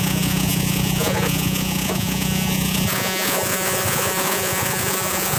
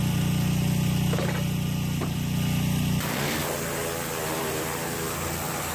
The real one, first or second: second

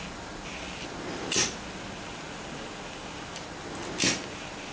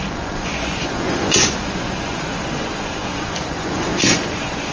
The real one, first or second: first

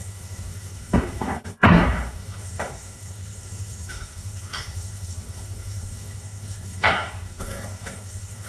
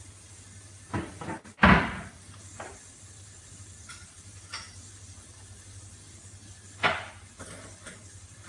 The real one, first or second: second